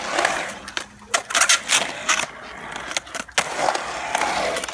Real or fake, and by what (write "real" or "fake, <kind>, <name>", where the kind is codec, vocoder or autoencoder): real